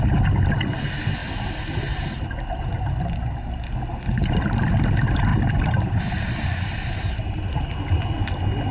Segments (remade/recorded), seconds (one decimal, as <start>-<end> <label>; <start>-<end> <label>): 0.0-5.3 recorded; 5.3-6.7 remade; 6.7-8.7 recorded